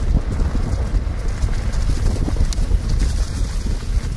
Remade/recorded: recorded